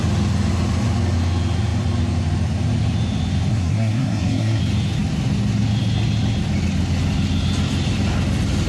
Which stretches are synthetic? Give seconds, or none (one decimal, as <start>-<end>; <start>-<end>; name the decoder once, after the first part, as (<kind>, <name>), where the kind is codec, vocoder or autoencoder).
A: 3.5-4.6 (codec, SNAC)